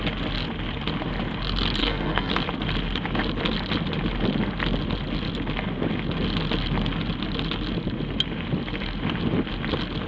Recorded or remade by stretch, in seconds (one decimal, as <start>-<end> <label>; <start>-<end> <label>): 0.0-1.8 recorded; 1.8-2.3 remade; 2.3-10.1 recorded